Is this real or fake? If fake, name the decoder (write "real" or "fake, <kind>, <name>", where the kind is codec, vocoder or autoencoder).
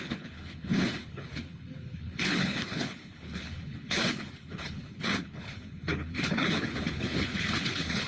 fake, codec, HILCodec